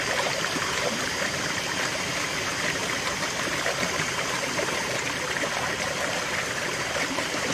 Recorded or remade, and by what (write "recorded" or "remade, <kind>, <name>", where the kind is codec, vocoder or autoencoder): remade, vocoder, BigVGAN v2